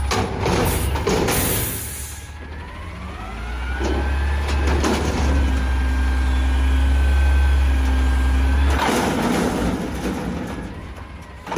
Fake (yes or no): no